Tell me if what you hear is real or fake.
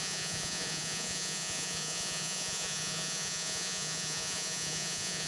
fake